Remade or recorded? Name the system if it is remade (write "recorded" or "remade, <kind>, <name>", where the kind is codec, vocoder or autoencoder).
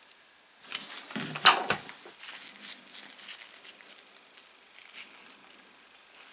recorded